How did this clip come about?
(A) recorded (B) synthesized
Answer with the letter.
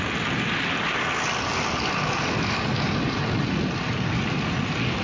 A